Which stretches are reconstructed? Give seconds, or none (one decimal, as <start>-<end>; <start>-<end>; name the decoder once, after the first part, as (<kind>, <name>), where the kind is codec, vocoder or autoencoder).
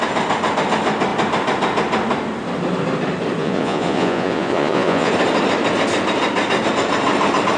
3.4-5.1 (vocoder, Vocos)